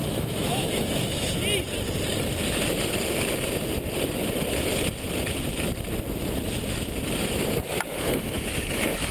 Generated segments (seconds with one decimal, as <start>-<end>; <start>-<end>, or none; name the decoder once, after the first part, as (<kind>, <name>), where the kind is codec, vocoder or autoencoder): 0.0-1.3 (autoencoder, DAC-VAE); 7.9-9.1

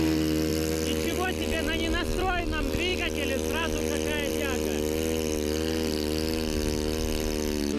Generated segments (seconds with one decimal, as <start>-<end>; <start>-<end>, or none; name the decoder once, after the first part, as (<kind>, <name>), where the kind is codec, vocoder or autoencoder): 0.5-1.4 (vocoder, BigVGAN v2)

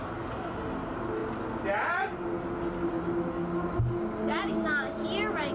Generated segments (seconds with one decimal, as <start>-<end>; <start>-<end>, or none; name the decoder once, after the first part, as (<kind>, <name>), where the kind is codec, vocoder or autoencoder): none

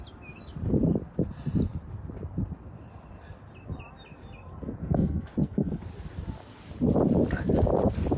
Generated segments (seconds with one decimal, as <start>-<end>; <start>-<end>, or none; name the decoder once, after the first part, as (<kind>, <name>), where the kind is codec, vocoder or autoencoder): 4.8-5.8 (codec, SNAC)

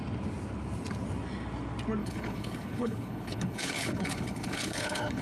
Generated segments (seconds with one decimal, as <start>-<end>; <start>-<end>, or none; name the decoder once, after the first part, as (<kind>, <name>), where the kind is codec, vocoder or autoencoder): 2.0-5.2 (codec, HILCodec)

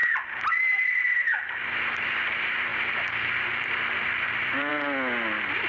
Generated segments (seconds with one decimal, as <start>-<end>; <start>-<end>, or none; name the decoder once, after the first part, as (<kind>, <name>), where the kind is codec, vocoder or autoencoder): 0.0-4.7 (vocoder, BigVGAN v2)

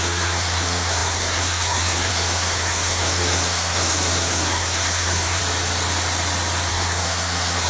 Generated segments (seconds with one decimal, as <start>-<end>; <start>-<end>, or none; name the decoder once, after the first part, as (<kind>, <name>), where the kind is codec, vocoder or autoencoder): 0.0-5.4 (codec, SNAC); 6.7-7.7